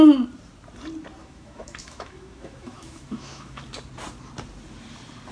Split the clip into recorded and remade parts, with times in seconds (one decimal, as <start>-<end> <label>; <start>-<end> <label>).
0.0-1.2 recorded; 1.2-3.6 remade; 3.6-5.3 recorded